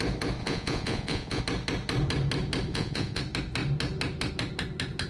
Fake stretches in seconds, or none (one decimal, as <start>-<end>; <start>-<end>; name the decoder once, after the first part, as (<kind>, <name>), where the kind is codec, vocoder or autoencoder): 0.4-1.4 (vocoder, Vocos); 2.7-3.2